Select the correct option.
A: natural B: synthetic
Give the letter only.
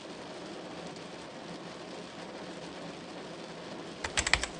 A